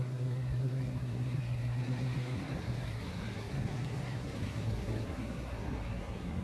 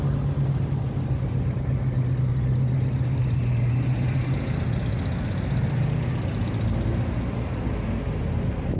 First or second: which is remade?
first